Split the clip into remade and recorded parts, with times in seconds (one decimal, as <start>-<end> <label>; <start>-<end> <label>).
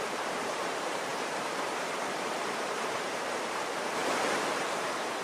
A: 0.0-4.0 remade; 4.0-4.5 recorded; 4.5-5.2 remade